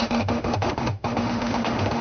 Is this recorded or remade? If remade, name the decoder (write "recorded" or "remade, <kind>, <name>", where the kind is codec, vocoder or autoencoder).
remade, autoencoder, DAC-VAE